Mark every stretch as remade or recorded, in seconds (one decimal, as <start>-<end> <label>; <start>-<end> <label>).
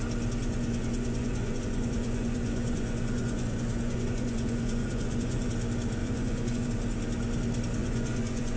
0.0-0.4 recorded; 0.4-5.5 remade; 5.5-6.0 recorded; 6.0-6.7 remade; 6.7-7.8 recorded; 7.8-8.6 remade